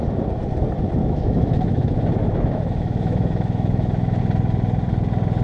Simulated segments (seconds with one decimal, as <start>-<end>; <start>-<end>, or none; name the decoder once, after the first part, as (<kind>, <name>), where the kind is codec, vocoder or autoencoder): 1.0-4.2 (autoencoder, DAC-VAE)